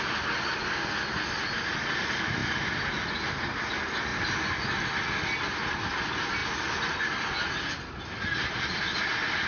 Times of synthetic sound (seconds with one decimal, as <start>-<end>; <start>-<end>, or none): none